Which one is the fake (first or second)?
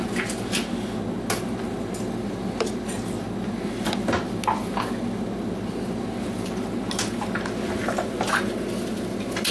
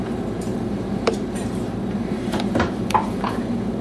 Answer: second